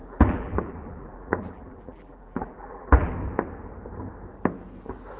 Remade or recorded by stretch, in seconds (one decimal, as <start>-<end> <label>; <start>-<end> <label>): 0.0-3.1 remade; 3.1-5.2 recorded